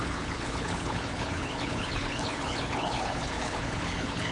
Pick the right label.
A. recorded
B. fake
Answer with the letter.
B